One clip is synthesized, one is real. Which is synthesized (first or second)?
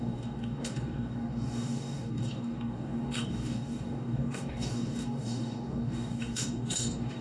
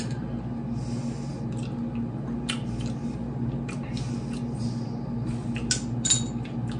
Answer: first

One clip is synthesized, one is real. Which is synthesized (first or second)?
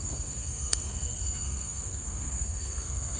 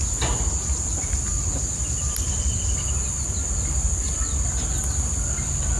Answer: first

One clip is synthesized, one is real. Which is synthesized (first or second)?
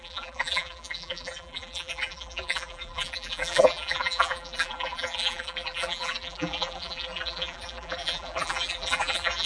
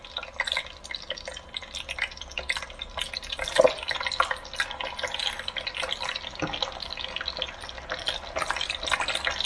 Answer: first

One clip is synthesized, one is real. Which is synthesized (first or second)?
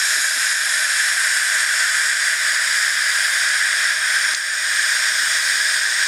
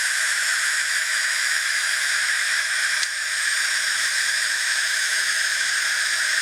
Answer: second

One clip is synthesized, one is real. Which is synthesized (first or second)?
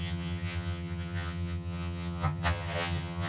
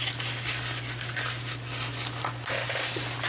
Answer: first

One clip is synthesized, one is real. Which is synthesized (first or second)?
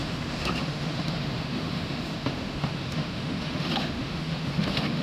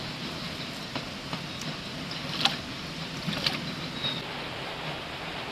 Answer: first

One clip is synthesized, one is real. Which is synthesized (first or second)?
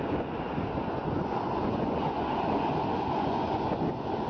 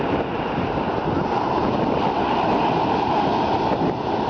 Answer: first